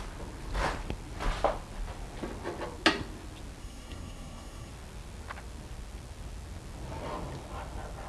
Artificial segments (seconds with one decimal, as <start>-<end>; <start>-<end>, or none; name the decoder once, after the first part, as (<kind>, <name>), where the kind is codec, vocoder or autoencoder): 3.6-4.7 (codec, SNAC)